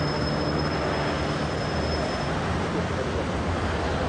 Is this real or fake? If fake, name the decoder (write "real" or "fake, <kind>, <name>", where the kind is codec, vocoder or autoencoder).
real